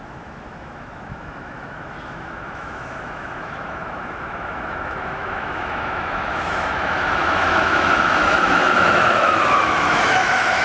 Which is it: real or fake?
fake